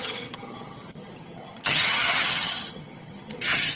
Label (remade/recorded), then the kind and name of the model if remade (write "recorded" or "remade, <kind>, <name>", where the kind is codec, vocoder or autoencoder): remade, vocoder, HiFi-GAN